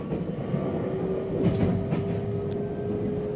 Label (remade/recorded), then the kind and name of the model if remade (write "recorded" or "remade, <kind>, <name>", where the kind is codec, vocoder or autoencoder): recorded